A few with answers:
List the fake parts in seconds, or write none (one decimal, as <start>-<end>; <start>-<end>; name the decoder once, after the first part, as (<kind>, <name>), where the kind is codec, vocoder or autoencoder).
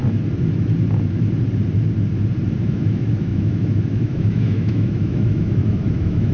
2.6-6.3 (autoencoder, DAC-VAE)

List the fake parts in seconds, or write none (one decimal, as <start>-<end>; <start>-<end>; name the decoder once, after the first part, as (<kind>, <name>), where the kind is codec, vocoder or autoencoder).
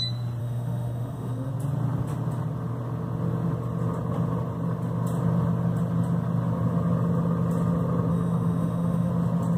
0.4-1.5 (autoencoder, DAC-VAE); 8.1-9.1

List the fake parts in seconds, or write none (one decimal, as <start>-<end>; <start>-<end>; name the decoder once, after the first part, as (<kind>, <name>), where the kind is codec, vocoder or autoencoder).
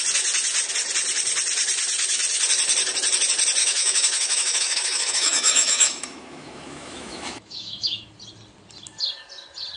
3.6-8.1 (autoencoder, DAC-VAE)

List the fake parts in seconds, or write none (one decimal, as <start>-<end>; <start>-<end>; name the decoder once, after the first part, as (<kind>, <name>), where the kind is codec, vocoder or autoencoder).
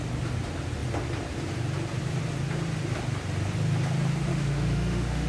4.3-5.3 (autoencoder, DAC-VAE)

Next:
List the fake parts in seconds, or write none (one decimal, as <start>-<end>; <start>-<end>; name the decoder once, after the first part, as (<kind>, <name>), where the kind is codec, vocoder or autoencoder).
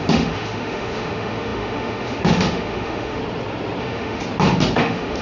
0.0-3.2 (autoencoder, DAC-VAE); 3.8-4.2; 4.8-5.2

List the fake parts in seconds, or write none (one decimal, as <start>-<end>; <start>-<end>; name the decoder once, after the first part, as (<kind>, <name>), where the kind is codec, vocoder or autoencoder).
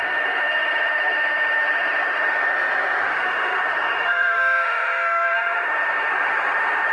0.0-2.5 (autoencoder, DAC-VAE); 3.0-6.9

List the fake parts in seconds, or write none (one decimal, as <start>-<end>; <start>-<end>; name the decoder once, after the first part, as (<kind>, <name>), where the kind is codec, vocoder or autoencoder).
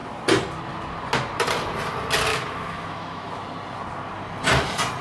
2.3-3.3 (autoencoder, DAC-VAE)